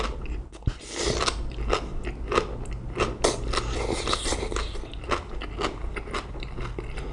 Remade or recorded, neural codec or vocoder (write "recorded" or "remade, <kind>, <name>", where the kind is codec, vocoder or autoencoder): recorded